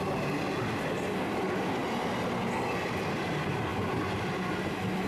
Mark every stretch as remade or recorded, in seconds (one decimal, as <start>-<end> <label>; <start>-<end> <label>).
0.0-5.1 recorded

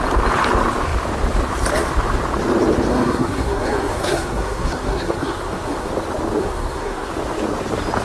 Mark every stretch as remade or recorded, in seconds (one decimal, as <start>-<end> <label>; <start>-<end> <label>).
0.0-2.9 recorded; 2.9-5.9 remade; 5.9-6.4 recorded; 6.4-7.1 remade; 7.1-8.0 recorded

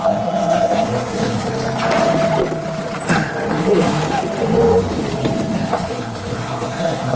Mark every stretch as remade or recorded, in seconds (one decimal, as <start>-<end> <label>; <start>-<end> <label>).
0.0-1.5 remade; 1.5-3.5 recorded; 3.5-4.0 remade; 4.0-5.7 recorded; 5.7-7.2 remade

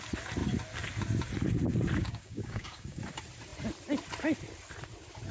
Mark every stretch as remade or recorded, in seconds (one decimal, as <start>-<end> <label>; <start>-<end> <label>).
0.0-2.0 recorded; 2.0-3.0 remade; 3.0-5.3 recorded

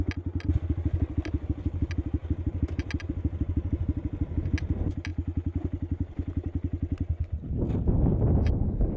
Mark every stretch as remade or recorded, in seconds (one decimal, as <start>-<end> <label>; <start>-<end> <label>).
0.0-9.0 recorded

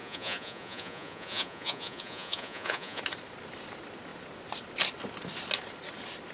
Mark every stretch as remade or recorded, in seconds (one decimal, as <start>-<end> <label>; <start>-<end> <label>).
0.0-3.0 remade; 3.0-6.3 recorded

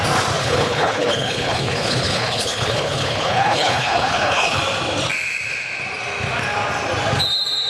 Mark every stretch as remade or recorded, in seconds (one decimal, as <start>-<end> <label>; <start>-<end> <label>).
0.0-0.4 recorded; 0.4-4.6 remade; 4.6-7.7 recorded

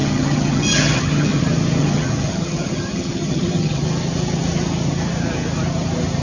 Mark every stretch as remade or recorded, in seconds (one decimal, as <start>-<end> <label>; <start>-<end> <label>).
0.0-1.4 remade; 1.4-1.8 recorded; 1.8-3.8 remade; 3.8-6.2 recorded